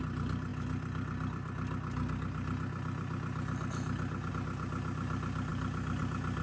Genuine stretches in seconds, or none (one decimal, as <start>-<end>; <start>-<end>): 0.0-6.4